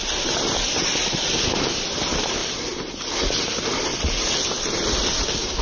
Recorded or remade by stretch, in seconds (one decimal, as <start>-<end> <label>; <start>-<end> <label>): 0.0-5.6 recorded